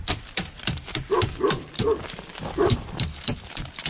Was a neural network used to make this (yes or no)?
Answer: no